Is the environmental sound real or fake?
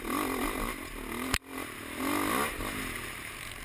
real